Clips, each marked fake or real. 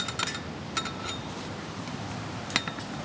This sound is real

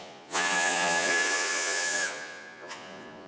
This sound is fake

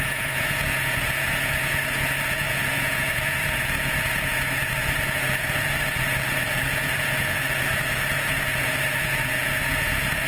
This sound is fake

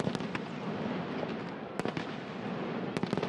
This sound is real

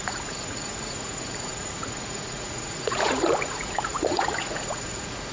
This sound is fake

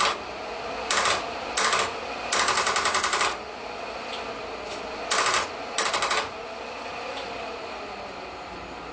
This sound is real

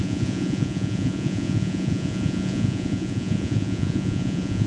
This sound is fake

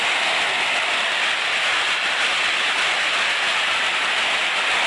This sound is real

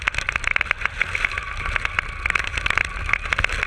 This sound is real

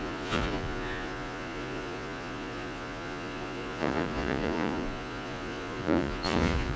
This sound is fake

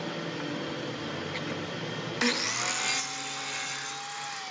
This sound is real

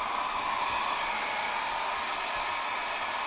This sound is real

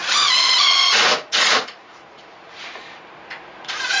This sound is fake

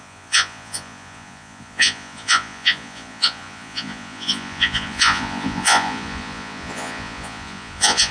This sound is fake